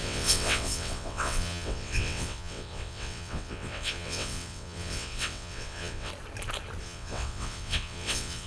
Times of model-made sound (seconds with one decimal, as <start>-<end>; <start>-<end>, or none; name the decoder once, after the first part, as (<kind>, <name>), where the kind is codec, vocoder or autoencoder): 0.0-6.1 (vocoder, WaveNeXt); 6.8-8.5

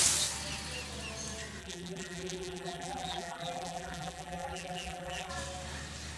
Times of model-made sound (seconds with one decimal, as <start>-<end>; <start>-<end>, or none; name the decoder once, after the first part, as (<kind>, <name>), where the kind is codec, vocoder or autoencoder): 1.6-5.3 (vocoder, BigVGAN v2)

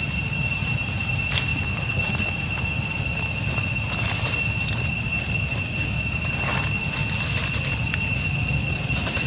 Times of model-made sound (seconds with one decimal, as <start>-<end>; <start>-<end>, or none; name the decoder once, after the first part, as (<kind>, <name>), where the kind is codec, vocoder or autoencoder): none

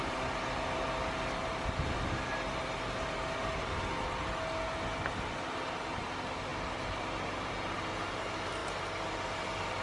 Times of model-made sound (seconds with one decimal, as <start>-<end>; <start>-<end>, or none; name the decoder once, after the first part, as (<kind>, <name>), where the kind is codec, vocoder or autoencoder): none